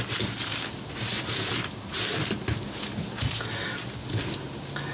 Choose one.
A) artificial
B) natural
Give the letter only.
B